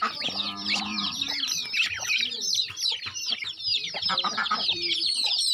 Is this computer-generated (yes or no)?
yes